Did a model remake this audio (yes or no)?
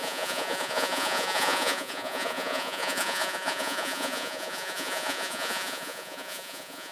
yes